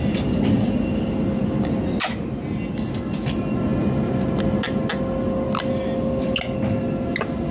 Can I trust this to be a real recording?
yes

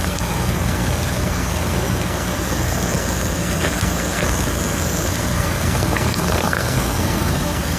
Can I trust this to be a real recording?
no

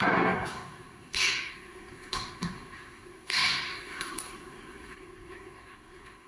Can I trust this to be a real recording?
no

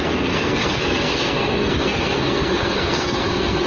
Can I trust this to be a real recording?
no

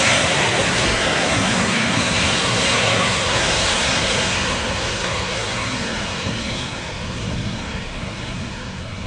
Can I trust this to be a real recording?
no